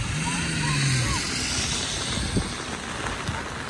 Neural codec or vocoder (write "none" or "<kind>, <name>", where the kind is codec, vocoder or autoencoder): none